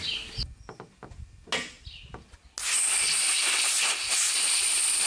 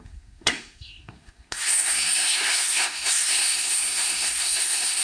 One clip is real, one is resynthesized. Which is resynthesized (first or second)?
second